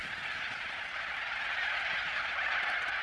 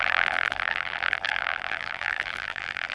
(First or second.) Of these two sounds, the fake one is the second